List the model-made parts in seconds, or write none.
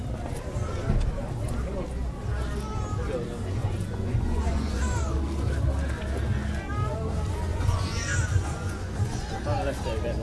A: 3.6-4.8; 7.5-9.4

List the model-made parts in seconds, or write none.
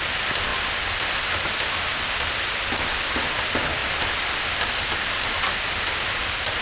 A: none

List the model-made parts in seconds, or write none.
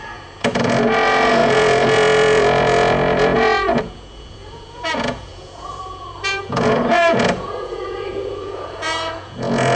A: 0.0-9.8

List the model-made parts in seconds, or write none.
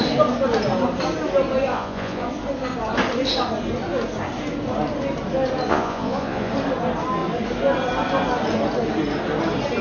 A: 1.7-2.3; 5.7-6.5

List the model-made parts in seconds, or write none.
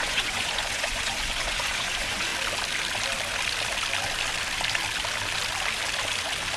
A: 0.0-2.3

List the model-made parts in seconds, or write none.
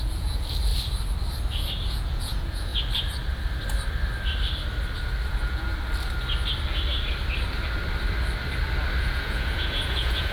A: 0.0-0.7; 1.9-2.7; 5.3-5.7; 9.0-10.3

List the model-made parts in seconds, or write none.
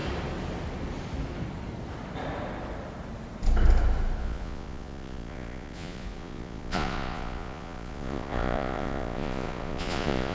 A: 4.2-10.3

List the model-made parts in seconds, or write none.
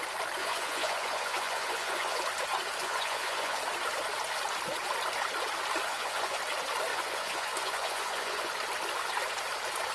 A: 0.4-2.2; 2.8-3.6; 5.9-6.4; 6.9-8.5